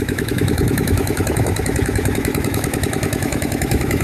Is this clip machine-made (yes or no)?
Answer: yes